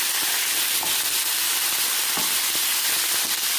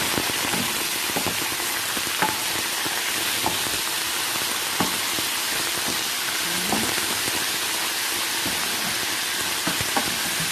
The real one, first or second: first